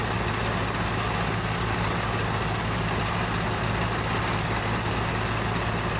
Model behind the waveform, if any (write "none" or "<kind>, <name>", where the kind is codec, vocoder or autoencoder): none